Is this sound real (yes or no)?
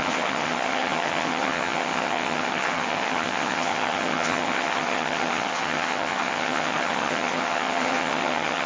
no